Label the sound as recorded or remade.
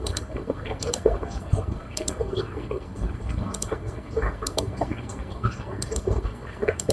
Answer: remade